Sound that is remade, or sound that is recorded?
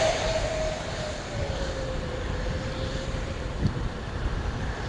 remade